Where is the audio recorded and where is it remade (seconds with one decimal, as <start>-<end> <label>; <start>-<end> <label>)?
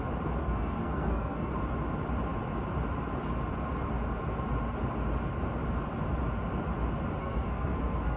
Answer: 0.0-0.4 recorded; 0.4-1.5 remade; 1.5-7.2 recorded; 7.2-8.2 remade